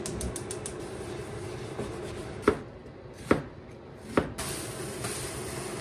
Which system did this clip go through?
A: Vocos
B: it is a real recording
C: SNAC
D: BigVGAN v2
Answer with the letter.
B